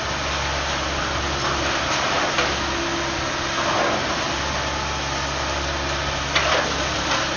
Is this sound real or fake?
real